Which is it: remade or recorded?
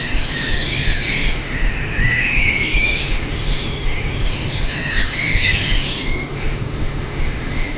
remade